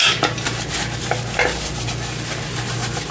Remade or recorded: recorded